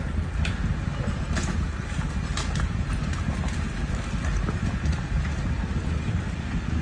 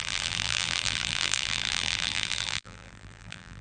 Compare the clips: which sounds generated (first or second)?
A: second